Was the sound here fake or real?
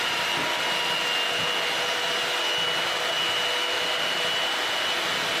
real